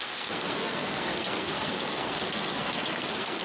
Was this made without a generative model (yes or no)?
no